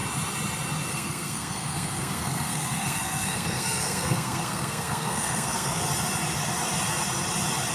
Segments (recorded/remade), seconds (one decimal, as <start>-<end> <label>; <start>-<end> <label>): 0.0-0.9 recorded; 0.9-5.8 remade; 5.8-7.7 recorded